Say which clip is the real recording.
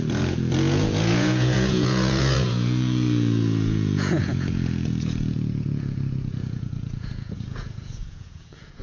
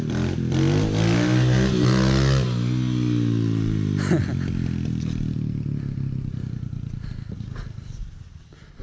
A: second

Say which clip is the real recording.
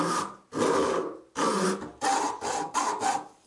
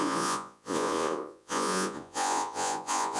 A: first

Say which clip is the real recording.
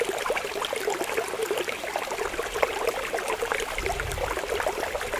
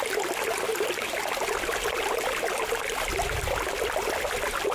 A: second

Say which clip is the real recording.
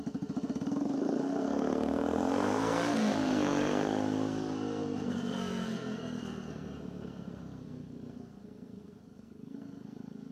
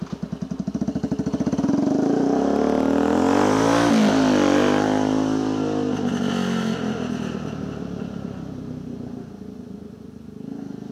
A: second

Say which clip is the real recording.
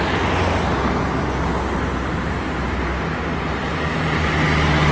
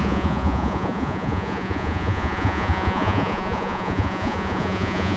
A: first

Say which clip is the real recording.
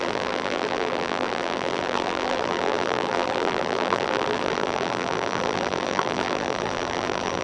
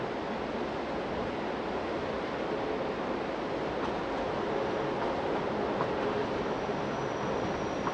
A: second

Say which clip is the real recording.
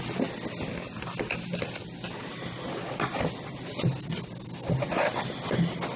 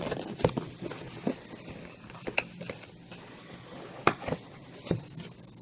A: first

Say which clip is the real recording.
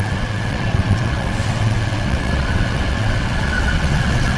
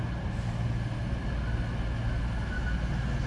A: second